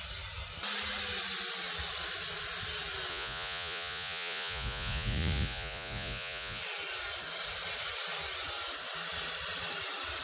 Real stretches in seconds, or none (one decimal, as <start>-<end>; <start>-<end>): 0.0-3.1; 6.6-10.2